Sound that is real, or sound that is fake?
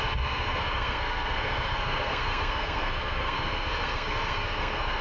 fake